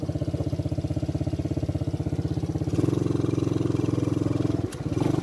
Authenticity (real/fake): real